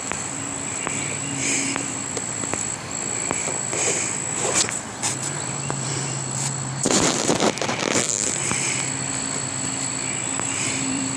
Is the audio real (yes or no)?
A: no